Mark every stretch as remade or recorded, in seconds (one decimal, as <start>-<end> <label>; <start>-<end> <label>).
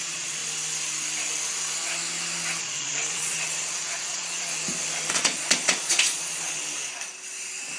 0.0-0.4 remade; 0.4-2.6 recorded; 2.6-4.5 remade; 4.5-5.1 recorded; 5.1-6.6 remade; 6.6-7.8 recorded